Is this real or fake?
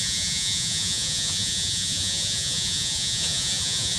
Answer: fake